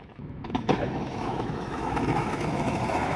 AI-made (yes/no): yes